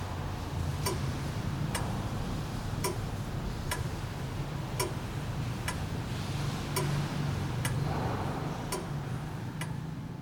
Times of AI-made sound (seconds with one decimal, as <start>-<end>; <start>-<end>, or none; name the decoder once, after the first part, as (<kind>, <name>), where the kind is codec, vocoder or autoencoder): 0.7-4.0 (vocoder, BigVGAN v2)